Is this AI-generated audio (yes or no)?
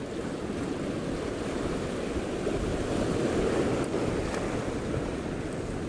no